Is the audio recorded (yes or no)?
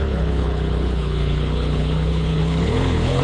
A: no